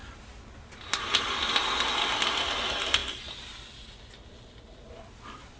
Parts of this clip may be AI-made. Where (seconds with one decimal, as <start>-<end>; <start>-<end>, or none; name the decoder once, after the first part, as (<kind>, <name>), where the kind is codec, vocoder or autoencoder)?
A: none